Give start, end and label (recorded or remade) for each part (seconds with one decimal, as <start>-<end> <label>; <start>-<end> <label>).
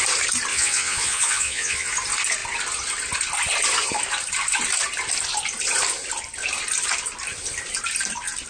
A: 0.0-0.5 recorded; 0.5-1.9 remade; 1.9-8.5 recorded